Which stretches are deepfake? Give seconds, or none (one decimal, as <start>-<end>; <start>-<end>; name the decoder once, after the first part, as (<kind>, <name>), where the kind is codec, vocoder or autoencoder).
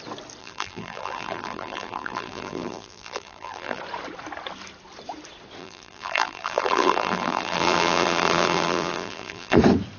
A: 0.4-3.8 (vocoder, BigVGAN v2); 5.6-9.6